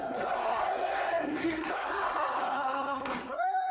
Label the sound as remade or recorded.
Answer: remade